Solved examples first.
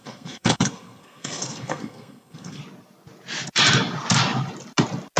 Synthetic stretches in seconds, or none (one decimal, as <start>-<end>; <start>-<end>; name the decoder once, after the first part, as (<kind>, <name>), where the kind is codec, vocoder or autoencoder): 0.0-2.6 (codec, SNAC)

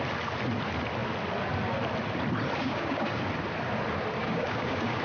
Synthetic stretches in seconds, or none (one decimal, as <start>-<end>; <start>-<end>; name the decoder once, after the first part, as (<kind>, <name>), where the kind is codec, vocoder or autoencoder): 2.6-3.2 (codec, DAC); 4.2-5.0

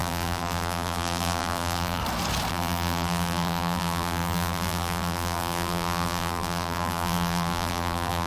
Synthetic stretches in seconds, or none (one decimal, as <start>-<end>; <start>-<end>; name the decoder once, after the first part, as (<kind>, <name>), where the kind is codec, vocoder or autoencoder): 0.0-2.0 (vocoder, BigVGAN v2); 2.5-8.3

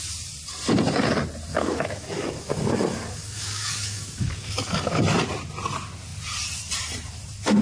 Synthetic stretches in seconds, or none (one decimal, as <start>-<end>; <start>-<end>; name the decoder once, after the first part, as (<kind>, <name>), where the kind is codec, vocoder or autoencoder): 1.5-5.0 (codec, DAC)

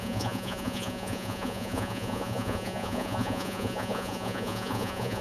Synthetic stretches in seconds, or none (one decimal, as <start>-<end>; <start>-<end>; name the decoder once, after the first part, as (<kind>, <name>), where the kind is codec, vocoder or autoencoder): 0.0-5.2 (vocoder, Vocos)

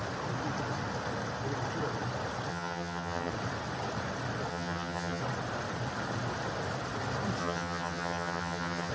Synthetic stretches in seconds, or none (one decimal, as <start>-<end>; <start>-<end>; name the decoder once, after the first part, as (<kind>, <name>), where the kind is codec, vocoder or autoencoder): 2.5-3.3 (vocoder, HiFi-GAN); 4.5-5.2; 7.4-8.9

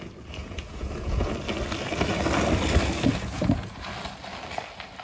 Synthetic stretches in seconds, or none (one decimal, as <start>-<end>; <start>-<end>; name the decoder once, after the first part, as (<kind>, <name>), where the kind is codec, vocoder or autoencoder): 0.4-1.3 (vocoder, Vocos); 3.3-3.9

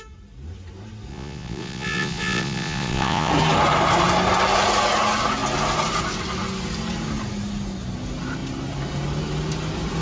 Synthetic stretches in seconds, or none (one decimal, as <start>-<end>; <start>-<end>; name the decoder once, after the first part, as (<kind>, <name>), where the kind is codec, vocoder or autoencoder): 1.1-3.3 (vocoder, Vocos)